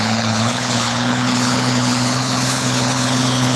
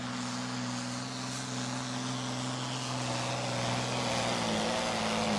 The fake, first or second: first